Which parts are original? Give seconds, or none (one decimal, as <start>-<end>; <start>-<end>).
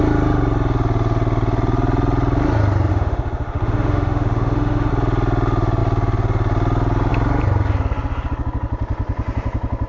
0.0-2.9; 4.9-9.9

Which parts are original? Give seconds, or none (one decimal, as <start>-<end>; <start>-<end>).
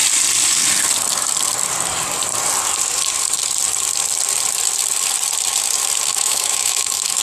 0.0-6.1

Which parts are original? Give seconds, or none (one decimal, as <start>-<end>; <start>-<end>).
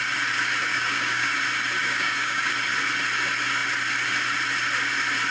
0.0-0.7; 1.3-1.8; 2.5-5.3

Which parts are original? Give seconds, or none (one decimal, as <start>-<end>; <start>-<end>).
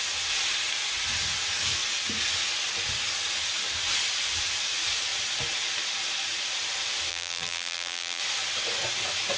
0.0-7.1; 8.2-9.4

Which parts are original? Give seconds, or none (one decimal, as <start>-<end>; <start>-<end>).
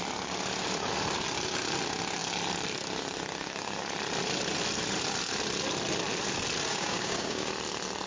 0.0-6.7; 7.5-8.1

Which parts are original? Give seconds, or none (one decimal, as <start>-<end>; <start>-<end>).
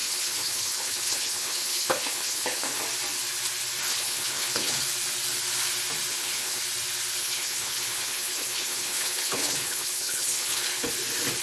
2.8-3.9; 4.8-6.1; 6.6-7.2; 10.9-11.4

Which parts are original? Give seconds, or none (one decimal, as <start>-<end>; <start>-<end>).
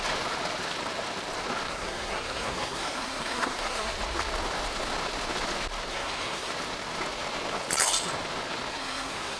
0.0-1.7; 3.9-5.9; 6.5-8.7